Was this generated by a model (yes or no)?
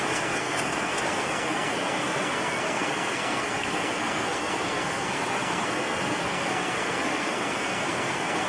yes